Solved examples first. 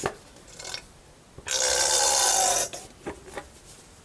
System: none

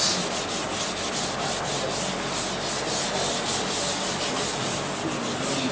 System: none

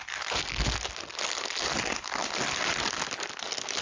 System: none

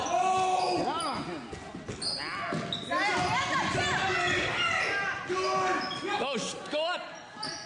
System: none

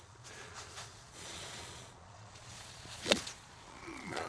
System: vocoder, Vocos